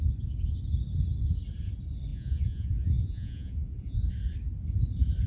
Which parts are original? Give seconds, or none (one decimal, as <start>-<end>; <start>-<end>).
0.0-2.1; 4.1-5.3